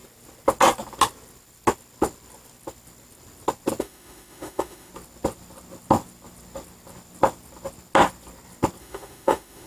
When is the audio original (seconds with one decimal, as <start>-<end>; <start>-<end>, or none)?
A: 0.0-3.8; 4.9-8.8